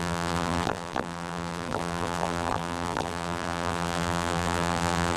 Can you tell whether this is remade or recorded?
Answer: remade